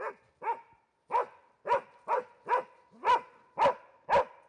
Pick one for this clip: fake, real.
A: real